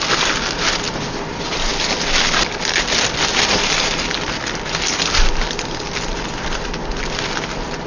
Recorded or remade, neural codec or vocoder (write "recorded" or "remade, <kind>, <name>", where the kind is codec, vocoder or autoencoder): recorded